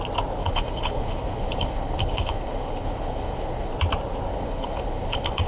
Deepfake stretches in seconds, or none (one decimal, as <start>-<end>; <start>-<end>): 0.4-3.7; 4.3-5.5

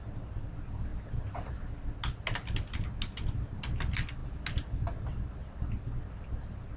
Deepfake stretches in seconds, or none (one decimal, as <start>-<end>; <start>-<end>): none